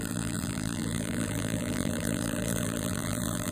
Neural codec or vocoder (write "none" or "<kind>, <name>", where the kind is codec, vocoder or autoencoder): vocoder, BigVGAN v2